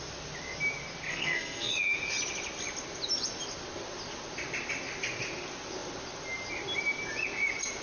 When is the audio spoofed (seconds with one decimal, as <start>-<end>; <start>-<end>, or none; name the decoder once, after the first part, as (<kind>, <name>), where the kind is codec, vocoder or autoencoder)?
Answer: 1.1-1.7 (codec, SNAC)